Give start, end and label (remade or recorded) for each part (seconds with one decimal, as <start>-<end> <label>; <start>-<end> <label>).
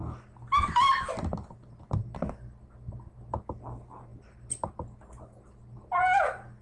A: 0.0-6.6 recorded